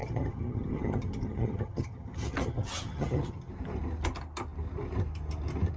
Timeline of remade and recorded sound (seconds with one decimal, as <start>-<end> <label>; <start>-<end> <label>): 0.0-3.5 remade; 3.5-5.8 recorded